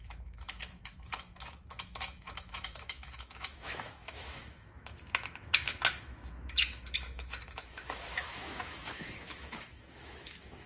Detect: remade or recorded remade